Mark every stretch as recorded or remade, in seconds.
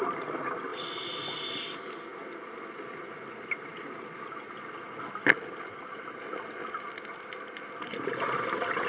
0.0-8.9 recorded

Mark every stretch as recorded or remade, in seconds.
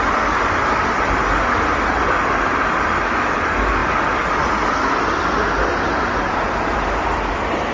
0.0-7.7 recorded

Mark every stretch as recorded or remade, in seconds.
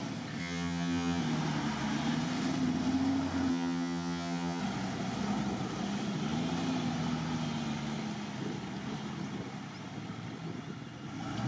0.0-0.4 recorded; 0.4-1.2 remade; 1.2-3.5 recorded; 3.5-4.6 remade; 4.6-11.5 recorded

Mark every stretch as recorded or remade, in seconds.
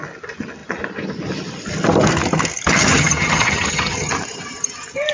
0.0-2.7 recorded; 2.7-4.1 remade; 4.1-5.1 recorded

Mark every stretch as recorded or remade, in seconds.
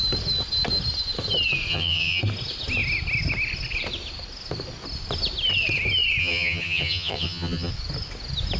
0.0-1.7 recorded; 1.7-2.2 remade; 2.2-6.2 recorded; 6.2-7.7 remade; 7.7-8.6 recorded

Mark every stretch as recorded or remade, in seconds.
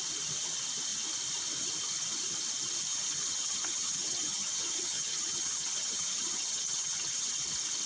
0.0-2.9 recorded; 2.9-7.3 remade; 7.3-7.9 recorded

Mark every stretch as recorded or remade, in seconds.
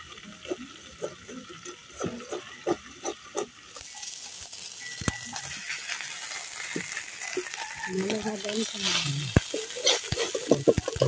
0.0-11.1 recorded